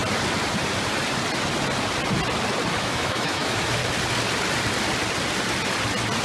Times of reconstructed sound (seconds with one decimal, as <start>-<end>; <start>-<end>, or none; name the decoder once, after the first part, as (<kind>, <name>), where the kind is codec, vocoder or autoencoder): 2.8-3.8 (autoencoder, DAC-VAE)